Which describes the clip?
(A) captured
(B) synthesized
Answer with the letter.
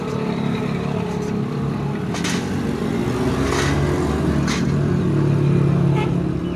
A